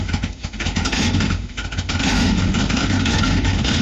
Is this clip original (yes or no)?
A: no